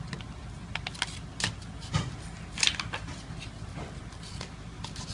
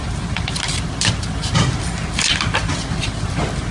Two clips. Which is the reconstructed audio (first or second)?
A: second